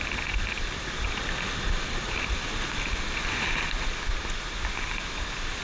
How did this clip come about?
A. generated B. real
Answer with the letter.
B